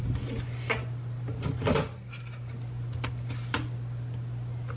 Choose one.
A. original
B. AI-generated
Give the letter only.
A